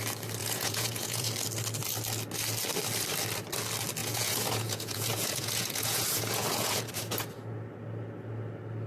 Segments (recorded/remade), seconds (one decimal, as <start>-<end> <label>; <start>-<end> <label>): 0.0-0.4 recorded; 0.4-1.3 remade; 1.3-4.0 recorded; 4.0-6.9 remade; 6.9-8.9 recorded